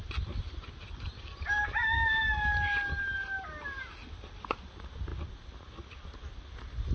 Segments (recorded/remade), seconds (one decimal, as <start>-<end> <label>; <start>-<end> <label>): 0.0-6.9 recorded